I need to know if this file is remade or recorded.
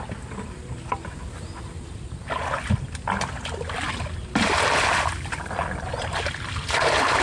recorded